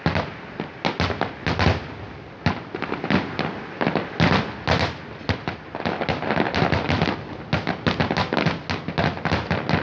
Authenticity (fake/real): real